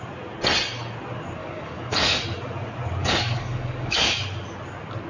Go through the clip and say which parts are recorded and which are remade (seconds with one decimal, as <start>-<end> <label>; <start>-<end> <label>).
0.0-1.4 recorded; 1.4-2.2 remade; 2.2-3.0 recorded; 3.0-4.2 remade; 4.2-5.1 recorded